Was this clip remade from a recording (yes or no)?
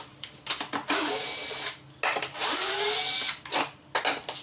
no